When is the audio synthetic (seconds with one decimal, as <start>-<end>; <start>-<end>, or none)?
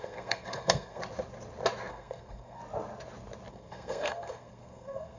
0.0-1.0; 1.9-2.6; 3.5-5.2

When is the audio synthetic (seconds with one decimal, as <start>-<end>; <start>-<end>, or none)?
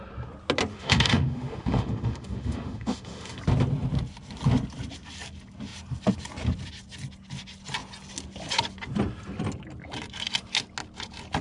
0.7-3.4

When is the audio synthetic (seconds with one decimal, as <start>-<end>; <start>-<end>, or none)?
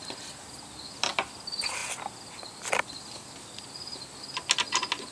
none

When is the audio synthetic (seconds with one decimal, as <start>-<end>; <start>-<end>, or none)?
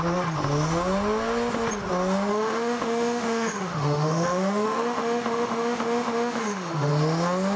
2.3-6.9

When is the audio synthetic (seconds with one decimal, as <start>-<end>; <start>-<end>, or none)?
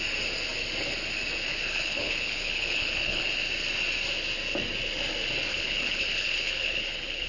1.5-3.2; 5.5-7.3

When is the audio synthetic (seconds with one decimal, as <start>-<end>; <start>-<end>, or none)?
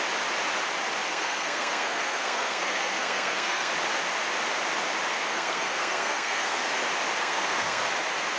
1.1-3.7; 5.1-6.7; 7.2-7.9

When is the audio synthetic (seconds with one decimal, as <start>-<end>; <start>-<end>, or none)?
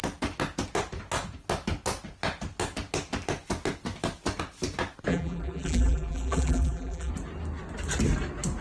5.1-7.1